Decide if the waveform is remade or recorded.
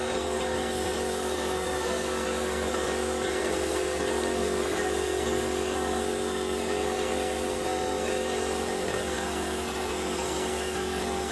remade